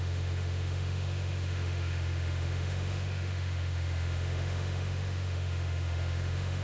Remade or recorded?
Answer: remade